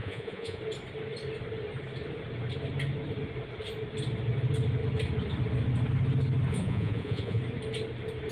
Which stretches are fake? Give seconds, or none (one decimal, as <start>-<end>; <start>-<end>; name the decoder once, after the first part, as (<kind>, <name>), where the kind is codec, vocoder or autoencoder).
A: 0.0-0.6 (vocoder, Vocos); 6.5-7.4